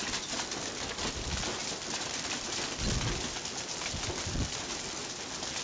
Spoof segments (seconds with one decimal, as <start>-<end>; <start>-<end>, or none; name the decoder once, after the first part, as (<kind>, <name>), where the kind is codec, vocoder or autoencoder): none